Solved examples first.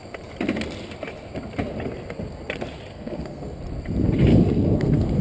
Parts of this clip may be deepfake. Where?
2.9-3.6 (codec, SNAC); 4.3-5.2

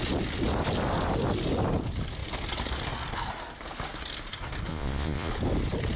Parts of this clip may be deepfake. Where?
4.7-5.3 (vocoder, Vocos)